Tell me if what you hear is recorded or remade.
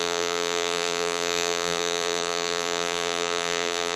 remade